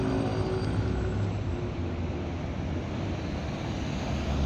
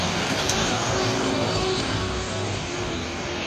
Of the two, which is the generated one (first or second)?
second